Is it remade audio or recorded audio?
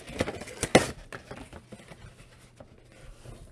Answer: recorded